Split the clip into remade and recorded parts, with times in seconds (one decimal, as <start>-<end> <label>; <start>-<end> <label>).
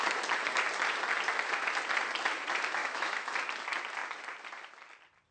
0.0-2.8 recorded; 2.8-3.3 remade; 3.3-5.3 recorded